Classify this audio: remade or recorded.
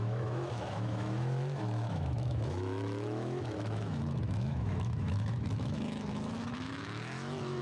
remade